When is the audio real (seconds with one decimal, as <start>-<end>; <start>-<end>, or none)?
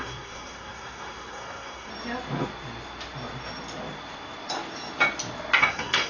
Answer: 1.9-5.6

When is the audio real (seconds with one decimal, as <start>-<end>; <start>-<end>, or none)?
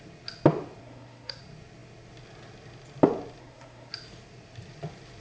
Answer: 0.0-0.8; 1.4-3.4; 3.9-5.2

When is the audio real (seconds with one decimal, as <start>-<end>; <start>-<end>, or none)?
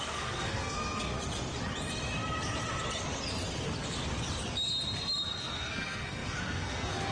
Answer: 1.1-5.4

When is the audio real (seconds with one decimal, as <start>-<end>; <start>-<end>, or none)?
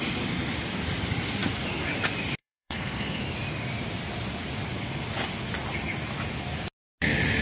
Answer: 0.0-2.4; 3.2-7.4